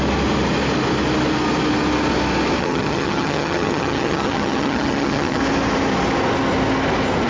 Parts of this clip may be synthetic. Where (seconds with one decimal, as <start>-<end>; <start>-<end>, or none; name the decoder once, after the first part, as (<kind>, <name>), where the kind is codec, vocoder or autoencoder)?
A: 2.6-5.4 (vocoder, HiFi-GAN)